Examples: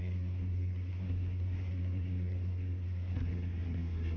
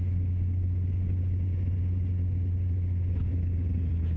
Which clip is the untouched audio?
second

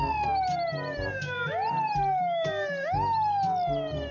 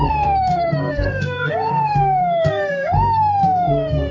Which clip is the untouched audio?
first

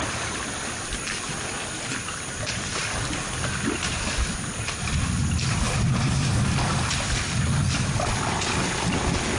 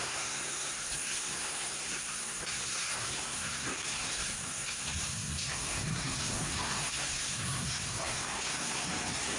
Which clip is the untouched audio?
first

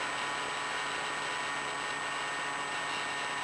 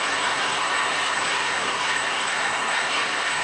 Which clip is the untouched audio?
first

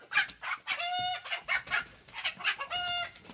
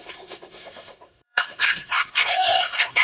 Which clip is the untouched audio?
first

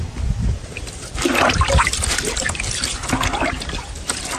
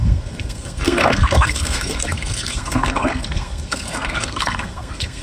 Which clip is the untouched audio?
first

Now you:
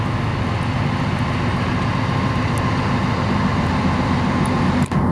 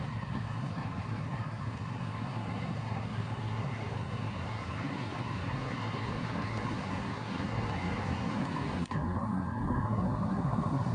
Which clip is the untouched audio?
first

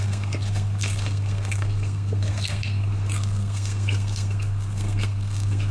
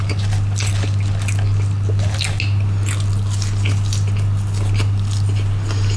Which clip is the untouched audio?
second